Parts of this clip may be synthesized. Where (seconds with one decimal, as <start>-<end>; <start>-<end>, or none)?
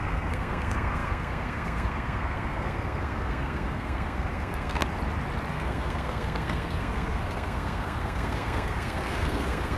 0.0-4.8; 5.5-9.8